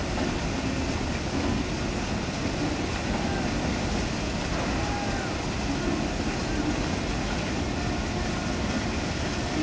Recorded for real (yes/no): yes